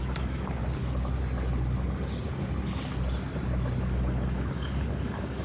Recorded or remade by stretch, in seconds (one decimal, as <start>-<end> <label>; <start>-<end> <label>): 0.0-0.6 remade; 0.6-3.8 recorded; 3.8-5.4 remade